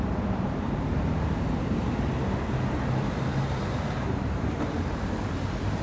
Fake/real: fake